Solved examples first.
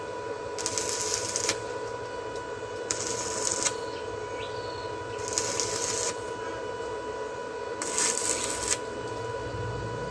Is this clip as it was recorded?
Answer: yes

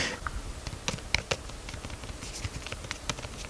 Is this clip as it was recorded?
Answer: yes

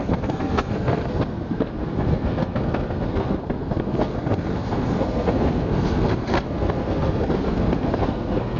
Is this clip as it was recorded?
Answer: no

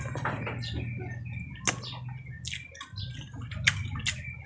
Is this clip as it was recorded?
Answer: yes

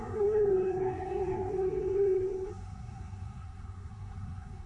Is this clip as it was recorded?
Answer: no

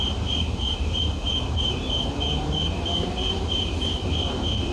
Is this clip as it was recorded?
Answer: no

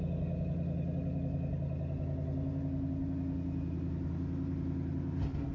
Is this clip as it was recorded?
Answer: yes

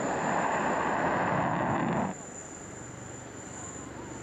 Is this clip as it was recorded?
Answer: yes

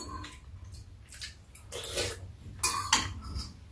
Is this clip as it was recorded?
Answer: yes